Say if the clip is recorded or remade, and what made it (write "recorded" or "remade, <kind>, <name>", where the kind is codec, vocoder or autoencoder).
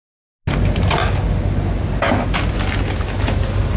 recorded